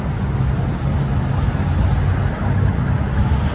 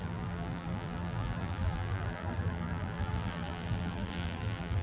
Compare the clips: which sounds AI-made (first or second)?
second